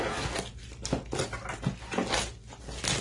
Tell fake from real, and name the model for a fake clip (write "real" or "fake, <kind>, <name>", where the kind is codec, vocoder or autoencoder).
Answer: real